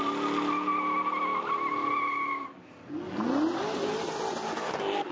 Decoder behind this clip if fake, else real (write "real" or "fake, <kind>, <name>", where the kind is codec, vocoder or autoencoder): real